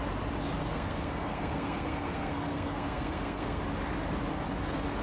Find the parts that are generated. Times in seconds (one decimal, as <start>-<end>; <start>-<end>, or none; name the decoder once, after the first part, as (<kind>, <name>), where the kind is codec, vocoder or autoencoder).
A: 0.6-3.6 (codec, SNAC)